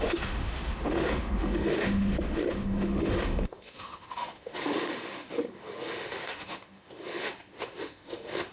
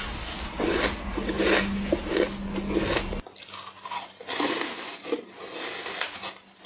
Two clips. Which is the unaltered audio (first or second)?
second